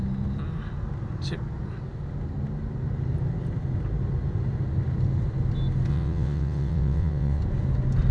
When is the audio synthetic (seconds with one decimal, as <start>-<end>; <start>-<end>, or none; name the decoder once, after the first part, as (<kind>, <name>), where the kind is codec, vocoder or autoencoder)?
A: 5.9-7.4 (vocoder, WaveNeXt)

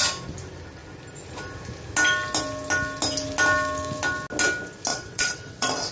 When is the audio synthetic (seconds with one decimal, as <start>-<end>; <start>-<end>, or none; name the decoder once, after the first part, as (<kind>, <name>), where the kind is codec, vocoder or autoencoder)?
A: 4.9-5.9 (vocoder, WaveNeXt)

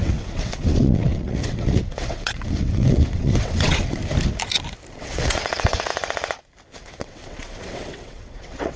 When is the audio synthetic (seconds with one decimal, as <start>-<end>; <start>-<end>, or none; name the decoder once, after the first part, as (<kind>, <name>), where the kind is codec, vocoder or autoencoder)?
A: 0.0-4.0 (vocoder, WaveNeXt); 4.9-5.9; 6.8-8.8

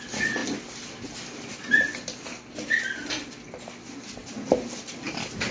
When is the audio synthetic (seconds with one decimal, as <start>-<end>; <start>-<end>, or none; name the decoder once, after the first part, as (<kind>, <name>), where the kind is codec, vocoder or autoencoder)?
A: none